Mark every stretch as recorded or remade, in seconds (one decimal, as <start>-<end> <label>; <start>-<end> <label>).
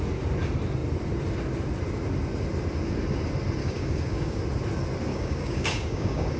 0.0-3.6 recorded; 3.6-4.4 remade; 4.4-5.1 recorded; 5.1-6.4 remade